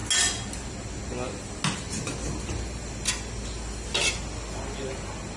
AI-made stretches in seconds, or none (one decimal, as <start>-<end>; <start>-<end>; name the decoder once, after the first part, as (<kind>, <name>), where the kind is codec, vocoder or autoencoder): none